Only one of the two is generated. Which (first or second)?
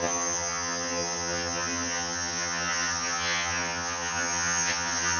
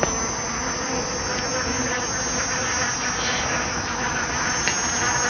first